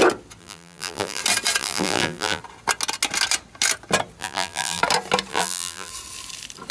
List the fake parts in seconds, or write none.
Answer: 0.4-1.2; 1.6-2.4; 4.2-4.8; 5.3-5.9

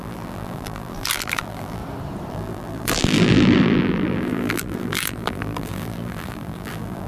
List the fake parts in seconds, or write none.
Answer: 0.0-1.8; 2.3-7.1